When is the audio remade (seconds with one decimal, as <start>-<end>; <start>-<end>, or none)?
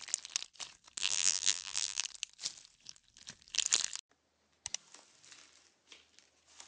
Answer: 1.0-2.0